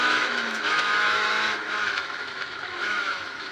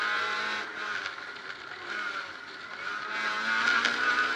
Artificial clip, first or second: first